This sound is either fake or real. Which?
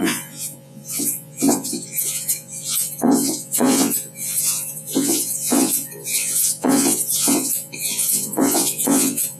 fake